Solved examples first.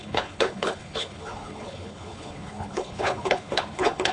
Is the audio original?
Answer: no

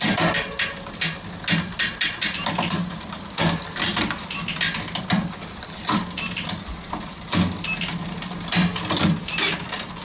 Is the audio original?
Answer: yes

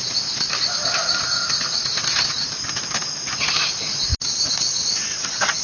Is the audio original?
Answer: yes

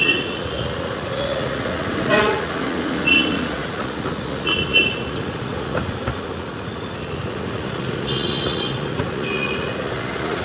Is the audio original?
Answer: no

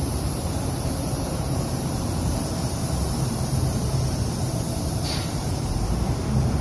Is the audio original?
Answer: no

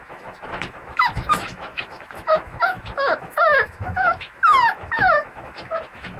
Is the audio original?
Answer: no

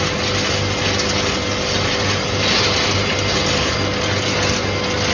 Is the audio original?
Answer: yes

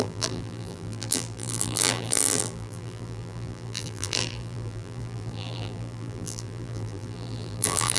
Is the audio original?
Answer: no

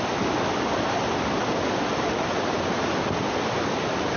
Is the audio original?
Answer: yes